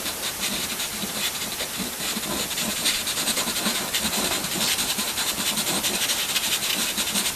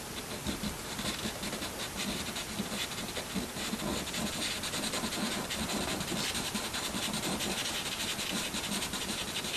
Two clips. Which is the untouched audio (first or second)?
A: second